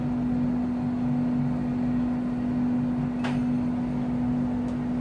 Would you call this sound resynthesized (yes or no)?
no